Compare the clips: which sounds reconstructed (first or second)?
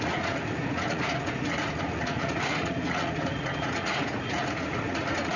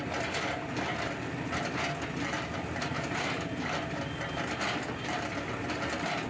first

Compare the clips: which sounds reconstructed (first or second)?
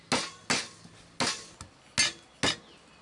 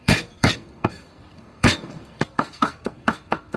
second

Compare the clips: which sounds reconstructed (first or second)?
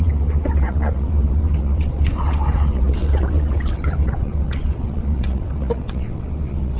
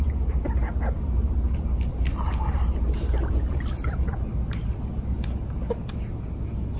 first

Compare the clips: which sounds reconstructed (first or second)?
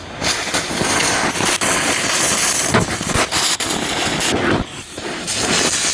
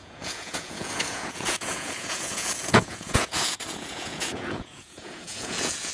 second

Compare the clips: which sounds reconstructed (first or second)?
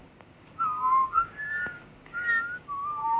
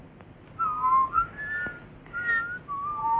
first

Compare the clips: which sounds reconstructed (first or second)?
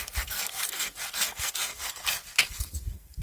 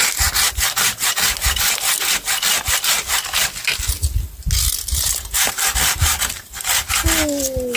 first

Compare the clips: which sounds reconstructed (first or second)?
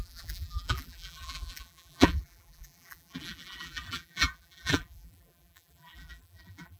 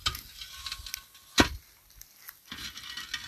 first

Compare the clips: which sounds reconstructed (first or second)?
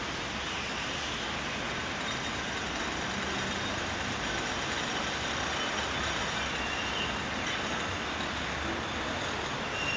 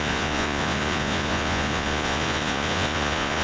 second